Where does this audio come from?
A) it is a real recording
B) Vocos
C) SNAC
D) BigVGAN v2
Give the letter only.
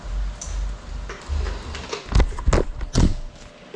A